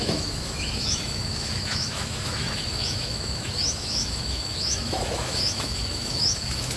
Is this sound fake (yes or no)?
yes